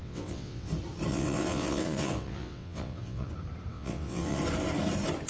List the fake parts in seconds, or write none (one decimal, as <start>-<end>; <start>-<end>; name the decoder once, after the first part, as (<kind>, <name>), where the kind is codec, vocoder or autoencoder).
0.0-0.7 (vocoder, WaveNeXt); 1.1-3.3; 3.7-4.4